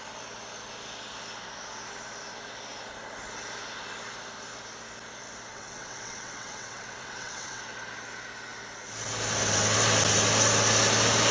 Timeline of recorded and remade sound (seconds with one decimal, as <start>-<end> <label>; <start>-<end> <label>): 0.0-5.5 recorded; 5.5-7.6 remade; 7.6-11.3 recorded